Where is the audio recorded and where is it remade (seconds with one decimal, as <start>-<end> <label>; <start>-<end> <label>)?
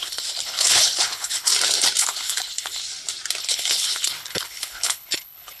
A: 0.0-1.5 remade; 1.5-2.0 recorded; 2.0-2.8 remade; 2.8-3.4 recorded; 3.4-5.6 remade